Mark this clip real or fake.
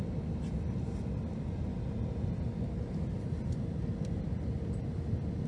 real